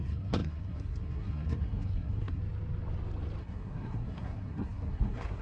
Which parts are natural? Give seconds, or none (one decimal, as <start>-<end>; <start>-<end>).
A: 2.4-3.4